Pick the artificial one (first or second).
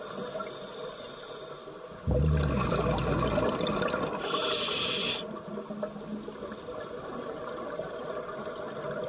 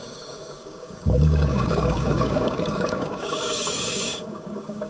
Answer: second